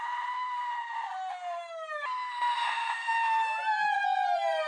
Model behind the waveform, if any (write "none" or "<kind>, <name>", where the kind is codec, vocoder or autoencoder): vocoder, BigVGAN v2